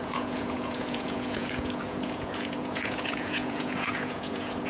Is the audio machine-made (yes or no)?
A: yes